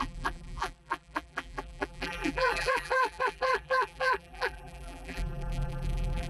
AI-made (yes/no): yes